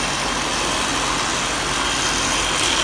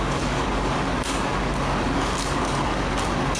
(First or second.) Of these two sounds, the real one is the first